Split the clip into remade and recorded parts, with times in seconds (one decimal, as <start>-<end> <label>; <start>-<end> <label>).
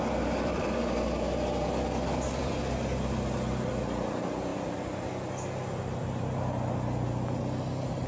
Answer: 0.0-8.1 remade